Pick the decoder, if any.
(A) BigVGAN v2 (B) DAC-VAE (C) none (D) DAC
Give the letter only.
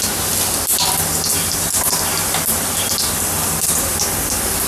C